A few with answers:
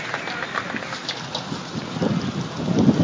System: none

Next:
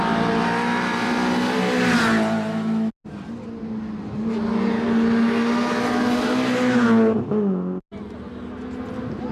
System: none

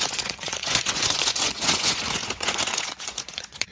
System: vocoder, Vocos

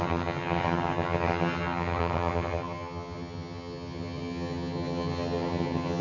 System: vocoder, HiFi-GAN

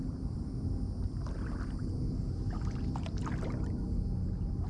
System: none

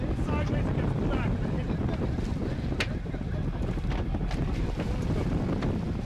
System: none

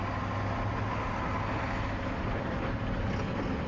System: none